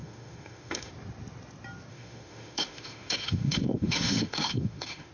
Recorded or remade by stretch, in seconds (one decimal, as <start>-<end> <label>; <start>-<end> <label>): 0.0-0.9 remade; 0.9-1.9 recorded; 1.9-5.1 remade